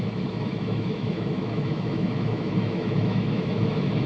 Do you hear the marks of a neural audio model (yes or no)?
yes